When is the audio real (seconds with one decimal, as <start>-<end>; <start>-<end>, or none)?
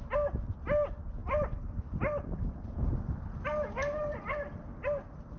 0.0-1.2; 4.4-5.4